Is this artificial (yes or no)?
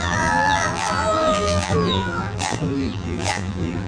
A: yes